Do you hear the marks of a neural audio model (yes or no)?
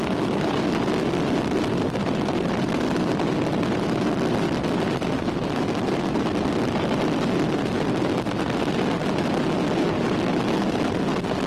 no